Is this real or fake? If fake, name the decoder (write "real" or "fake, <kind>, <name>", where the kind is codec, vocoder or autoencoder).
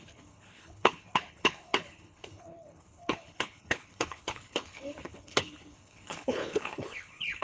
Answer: fake, codec, HILCodec